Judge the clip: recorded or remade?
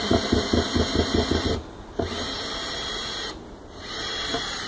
recorded